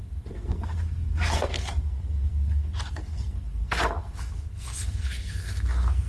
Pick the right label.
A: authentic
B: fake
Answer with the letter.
B